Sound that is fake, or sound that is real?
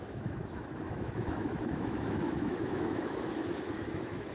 fake